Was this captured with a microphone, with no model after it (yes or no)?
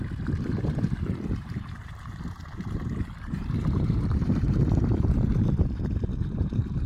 no